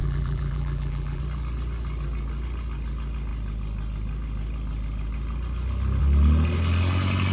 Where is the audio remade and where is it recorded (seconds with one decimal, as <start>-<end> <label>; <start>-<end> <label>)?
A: 0.0-1.2 remade; 1.2-7.3 recorded